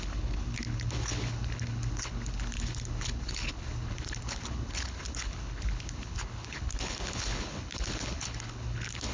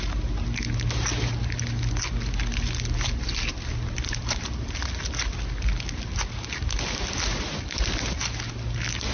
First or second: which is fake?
first